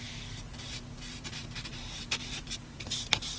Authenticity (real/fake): fake